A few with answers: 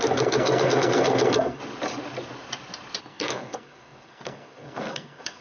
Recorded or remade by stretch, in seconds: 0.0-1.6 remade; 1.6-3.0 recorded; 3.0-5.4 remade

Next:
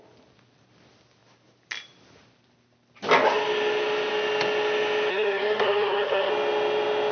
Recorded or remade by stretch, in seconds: 0.0-5.1 recorded; 5.1-6.3 remade; 6.3-7.1 recorded

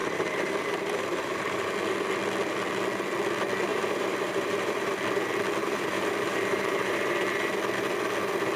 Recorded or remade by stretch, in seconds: 0.0-1.6 remade; 1.6-3.7 recorded; 3.7-4.9 remade; 4.9-5.6 recorded; 5.6-7.5 remade; 7.5-8.6 recorded

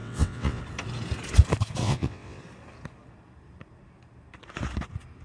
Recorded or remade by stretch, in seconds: 0.0-0.6 remade; 0.6-1.8 recorded; 1.8-2.4 remade; 2.4-5.2 recorded

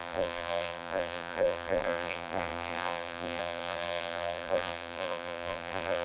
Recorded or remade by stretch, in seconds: 0.0-6.0 remade

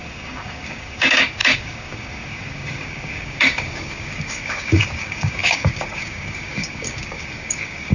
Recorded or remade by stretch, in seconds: 0.0-7.9 remade

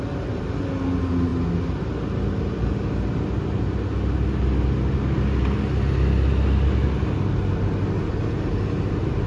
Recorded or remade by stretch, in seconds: 0.0-9.3 recorded